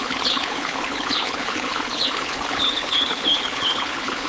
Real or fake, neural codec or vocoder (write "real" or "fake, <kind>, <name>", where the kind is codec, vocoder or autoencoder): fake, codec, HILCodec